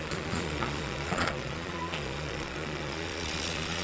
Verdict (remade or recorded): remade